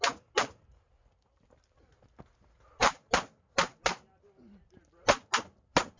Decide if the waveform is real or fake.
real